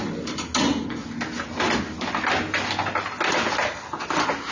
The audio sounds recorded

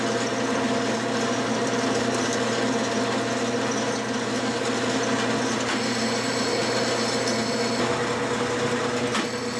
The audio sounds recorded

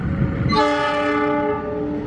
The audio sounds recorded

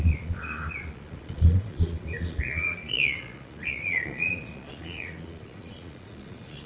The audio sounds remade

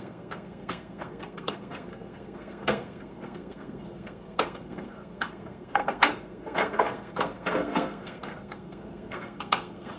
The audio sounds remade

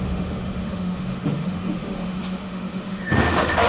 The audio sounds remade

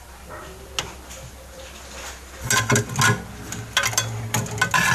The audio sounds recorded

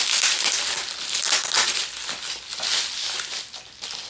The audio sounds recorded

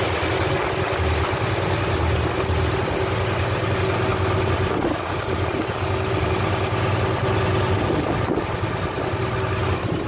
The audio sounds recorded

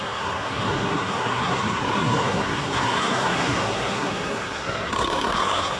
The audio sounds remade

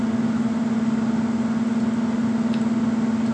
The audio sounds recorded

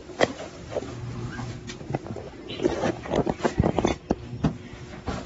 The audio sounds recorded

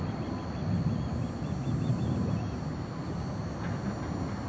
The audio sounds recorded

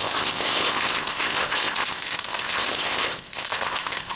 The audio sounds remade